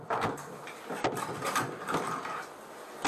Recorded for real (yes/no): yes